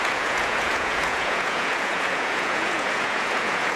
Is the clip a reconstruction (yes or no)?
yes